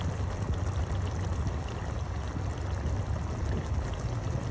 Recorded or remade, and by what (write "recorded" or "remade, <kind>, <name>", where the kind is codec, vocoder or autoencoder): recorded